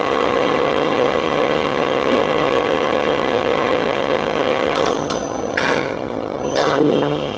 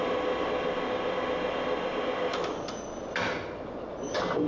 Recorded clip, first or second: second